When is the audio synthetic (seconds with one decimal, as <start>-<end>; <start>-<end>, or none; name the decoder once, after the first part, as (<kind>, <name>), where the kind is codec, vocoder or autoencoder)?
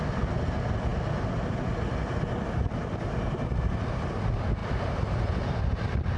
none